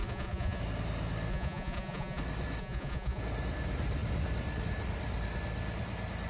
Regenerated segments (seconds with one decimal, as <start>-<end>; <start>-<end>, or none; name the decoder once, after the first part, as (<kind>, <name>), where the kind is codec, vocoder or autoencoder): 0.0-0.6 (vocoder, Vocos); 1.3-2.2; 2.6-3.2